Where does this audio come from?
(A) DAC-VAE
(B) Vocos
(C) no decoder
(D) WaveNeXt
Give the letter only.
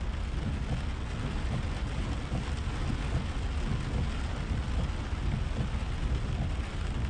C